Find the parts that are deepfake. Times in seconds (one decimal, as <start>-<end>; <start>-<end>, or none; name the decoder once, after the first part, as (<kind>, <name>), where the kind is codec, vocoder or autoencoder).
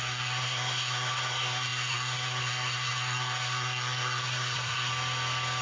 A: 0.0-4.9 (codec, SNAC)